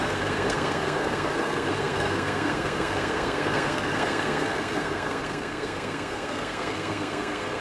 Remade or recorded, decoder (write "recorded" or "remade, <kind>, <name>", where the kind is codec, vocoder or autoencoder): remade, codec, SNAC